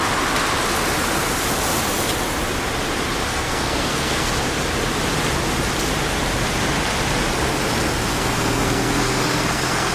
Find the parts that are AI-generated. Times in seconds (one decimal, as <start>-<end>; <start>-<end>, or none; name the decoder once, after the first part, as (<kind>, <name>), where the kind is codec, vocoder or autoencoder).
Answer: 3.3-4.3 (codec, SNAC); 8.1-9.9